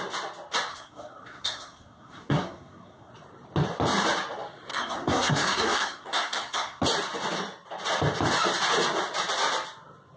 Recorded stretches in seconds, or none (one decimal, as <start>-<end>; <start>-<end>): 0.0-0.7; 3.1-4.7; 6.8-10.2

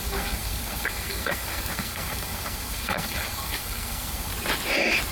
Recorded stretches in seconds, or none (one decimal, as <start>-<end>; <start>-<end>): 4.3-5.1

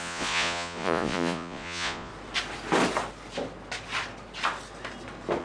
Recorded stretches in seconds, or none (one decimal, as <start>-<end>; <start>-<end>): 2.1-5.4

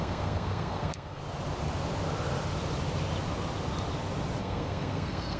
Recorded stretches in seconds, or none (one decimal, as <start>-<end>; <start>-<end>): 1.2-4.4

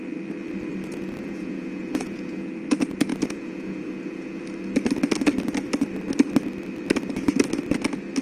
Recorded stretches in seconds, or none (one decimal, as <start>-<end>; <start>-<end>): 0.0-0.7; 2.6-3.1; 4.4-8.2